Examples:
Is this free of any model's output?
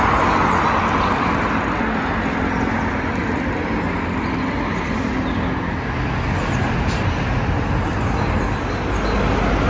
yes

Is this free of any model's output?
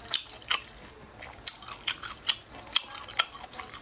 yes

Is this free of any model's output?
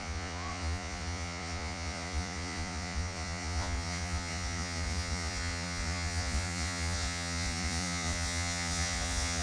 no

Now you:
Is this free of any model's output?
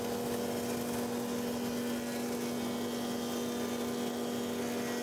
yes